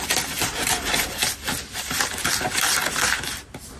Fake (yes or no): no